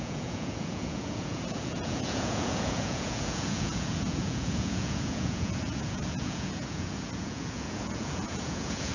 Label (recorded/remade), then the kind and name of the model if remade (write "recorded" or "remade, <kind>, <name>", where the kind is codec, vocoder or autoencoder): remade, vocoder, Vocos